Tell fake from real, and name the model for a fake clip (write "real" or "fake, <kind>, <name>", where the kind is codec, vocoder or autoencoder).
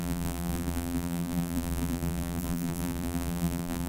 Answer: fake, vocoder, BigVGAN v2